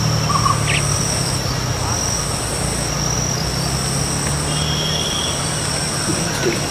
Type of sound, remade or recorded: recorded